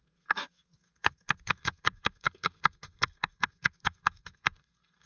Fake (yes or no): yes